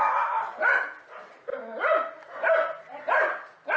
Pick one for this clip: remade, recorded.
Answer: recorded